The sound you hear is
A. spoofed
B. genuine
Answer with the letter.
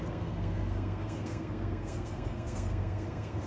A